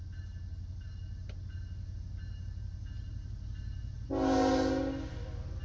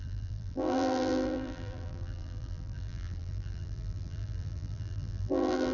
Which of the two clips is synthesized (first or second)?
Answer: second